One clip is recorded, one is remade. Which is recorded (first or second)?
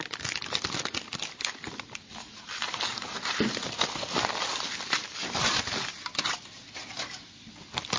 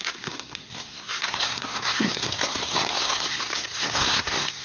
first